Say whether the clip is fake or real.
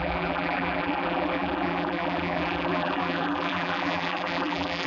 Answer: fake